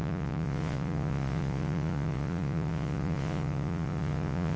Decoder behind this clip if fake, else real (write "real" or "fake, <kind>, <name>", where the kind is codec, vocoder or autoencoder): fake, vocoder, Vocos